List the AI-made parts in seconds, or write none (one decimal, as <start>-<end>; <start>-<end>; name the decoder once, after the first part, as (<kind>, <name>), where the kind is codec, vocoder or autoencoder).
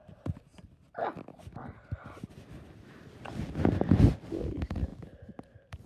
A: 0.0-0.5 (vocoder, BigVGAN v2); 4.0-4.9